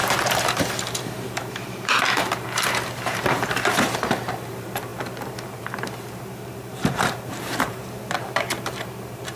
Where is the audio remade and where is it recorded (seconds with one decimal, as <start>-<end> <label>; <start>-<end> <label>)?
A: 0.0-9.4 remade